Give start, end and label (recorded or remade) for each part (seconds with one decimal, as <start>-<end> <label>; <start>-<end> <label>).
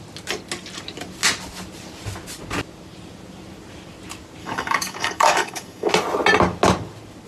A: 0.0-4.4 recorded; 4.4-5.9 remade; 5.9-7.3 recorded